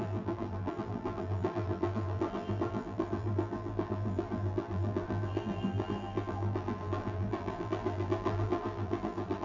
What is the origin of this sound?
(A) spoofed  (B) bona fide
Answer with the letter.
A